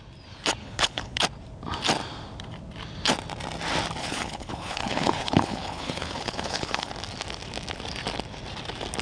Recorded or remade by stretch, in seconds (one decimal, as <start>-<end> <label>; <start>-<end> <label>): 0.0-0.6 recorded; 0.6-1.2 remade; 1.2-4.0 recorded; 4.0-6.9 remade; 6.9-9.0 recorded